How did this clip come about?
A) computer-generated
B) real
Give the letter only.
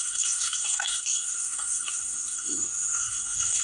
A